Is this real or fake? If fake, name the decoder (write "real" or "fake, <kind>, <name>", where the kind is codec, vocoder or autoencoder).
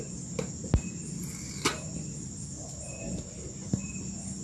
real